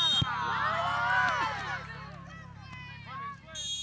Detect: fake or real real